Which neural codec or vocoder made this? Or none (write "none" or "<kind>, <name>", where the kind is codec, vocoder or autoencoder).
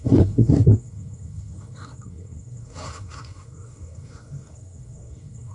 codec, SNAC